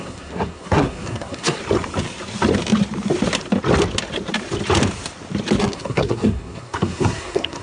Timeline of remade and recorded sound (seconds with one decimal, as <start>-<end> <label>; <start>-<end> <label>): 0.0-1.6 remade; 1.6-5.6 recorded; 5.6-7.6 remade

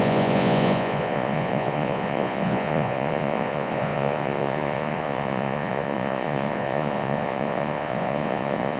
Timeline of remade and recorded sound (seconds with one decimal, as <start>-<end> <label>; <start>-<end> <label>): 0.0-8.8 remade

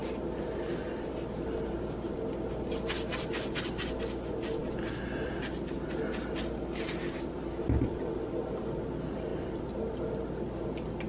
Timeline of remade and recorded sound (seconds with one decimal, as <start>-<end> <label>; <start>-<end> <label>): 0.0-11.1 recorded

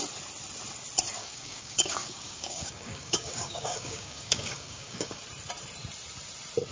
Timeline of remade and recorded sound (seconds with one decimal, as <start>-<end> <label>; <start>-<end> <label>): 0.0-1.2 recorded; 1.2-5.2 remade; 5.2-6.7 recorded

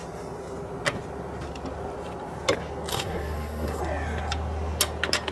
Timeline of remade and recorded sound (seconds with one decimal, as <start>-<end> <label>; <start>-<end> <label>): 0.0-2.9 recorded; 2.9-3.8 remade; 3.8-5.3 recorded